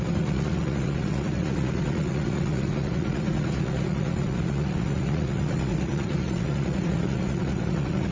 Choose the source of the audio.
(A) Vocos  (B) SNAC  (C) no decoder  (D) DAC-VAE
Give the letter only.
A